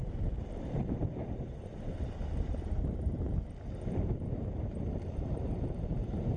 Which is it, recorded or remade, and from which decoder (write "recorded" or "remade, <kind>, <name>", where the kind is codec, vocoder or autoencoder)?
remade, vocoder, BigVGAN v2